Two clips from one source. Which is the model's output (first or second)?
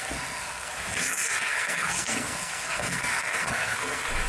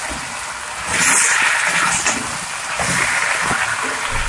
first